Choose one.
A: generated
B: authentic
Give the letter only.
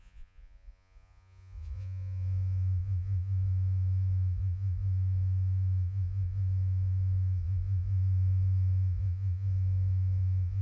A